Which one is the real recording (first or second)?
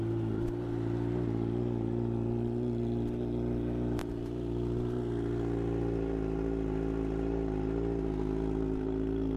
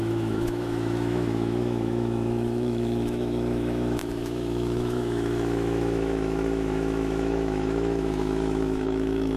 first